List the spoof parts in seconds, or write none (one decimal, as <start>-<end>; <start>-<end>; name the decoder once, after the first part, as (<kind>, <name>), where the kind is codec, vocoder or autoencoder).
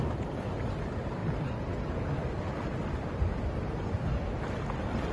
none